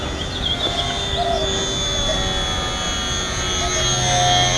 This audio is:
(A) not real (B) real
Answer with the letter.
B